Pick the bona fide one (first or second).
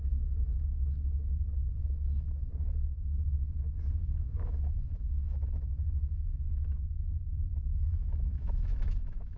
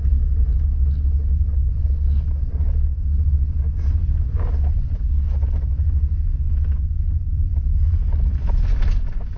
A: second